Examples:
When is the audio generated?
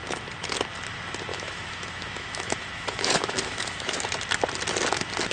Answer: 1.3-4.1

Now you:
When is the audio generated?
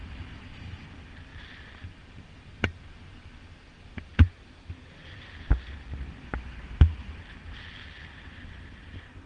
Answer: none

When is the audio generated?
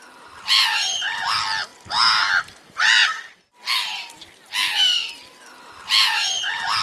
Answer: none